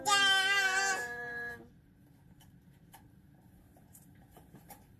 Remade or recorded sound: remade